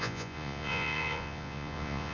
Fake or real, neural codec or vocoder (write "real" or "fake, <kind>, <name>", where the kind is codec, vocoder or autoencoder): fake, vocoder, Vocos